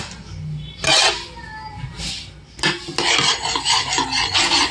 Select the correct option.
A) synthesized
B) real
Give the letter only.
B